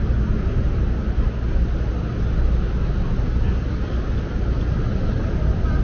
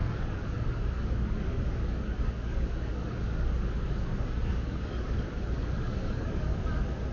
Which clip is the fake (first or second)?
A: second